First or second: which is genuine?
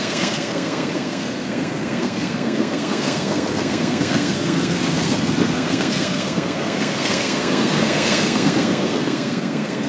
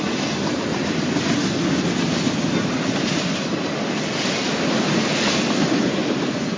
second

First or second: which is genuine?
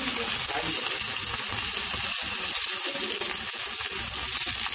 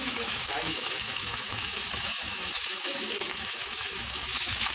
first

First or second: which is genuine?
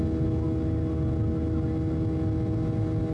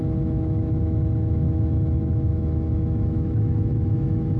first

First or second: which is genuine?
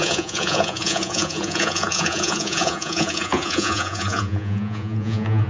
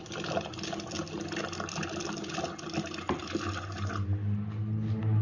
second